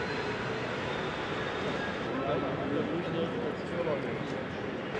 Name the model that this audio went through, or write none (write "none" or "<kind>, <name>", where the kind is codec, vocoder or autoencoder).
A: none